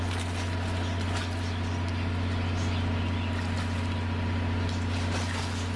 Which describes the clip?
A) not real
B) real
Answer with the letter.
B